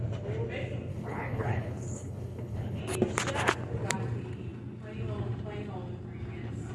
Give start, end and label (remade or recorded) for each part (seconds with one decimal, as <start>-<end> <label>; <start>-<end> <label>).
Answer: 0.0-0.9 recorded; 0.9-2.8 remade; 2.8-6.7 recorded